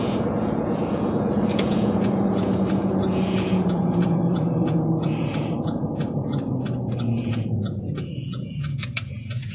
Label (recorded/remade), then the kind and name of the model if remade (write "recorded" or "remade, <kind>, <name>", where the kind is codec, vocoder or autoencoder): remade, vocoder, Vocos